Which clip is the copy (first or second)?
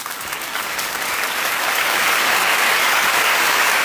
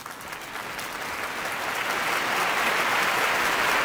first